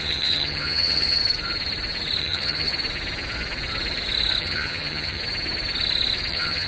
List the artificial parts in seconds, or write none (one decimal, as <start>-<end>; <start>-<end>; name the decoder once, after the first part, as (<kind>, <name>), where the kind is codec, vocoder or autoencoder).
0.0-1.2 (vocoder, HiFi-GAN); 2.2-2.7; 4.4-5.2; 6.3-6.7